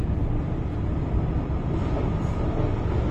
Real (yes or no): yes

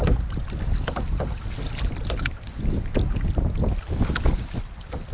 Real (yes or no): yes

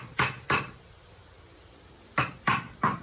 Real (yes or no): no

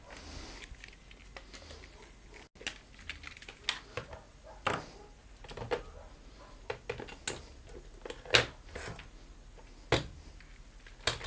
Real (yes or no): yes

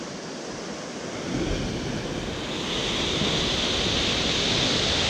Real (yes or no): yes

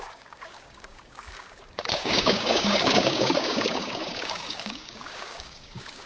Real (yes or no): no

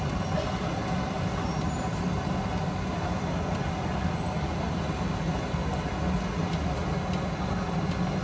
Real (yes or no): yes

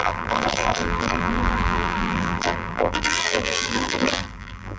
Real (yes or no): no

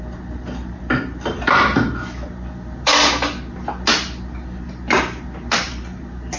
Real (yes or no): yes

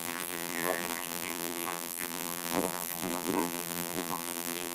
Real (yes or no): no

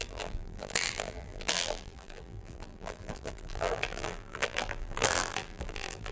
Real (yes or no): no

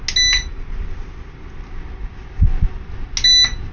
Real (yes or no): yes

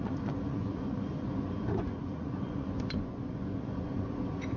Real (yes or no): no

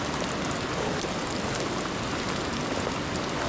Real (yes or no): yes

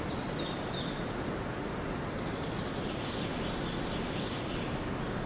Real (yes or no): yes